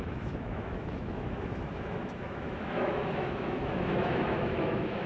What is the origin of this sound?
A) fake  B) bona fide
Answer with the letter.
A